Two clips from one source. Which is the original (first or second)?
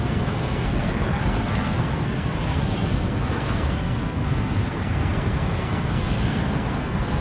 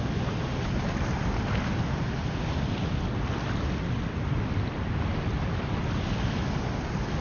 second